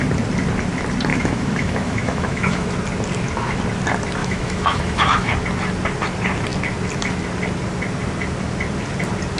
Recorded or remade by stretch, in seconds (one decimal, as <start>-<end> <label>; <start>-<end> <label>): 0.0-1.1 recorded; 1.1-2.7 remade; 2.7-4.2 recorded; 4.2-5.3 remade; 5.3-9.4 recorded